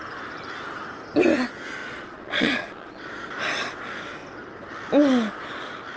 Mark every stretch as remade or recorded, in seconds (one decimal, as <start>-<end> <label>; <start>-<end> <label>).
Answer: 0.0-1.8 recorded; 1.8-3.3 remade; 3.3-6.0 recorded